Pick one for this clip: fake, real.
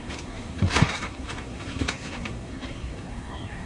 fake